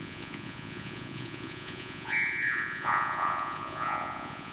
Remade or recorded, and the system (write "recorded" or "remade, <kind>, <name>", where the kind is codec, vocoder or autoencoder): remade, vocoder, Vocos